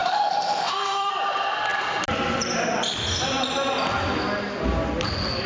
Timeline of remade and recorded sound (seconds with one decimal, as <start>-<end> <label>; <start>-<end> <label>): 0.0-1.1 remade; 1.1-5.5 recorded